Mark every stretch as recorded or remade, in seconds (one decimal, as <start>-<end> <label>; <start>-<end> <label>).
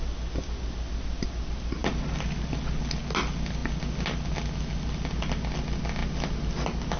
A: 0.0-7.0 recorded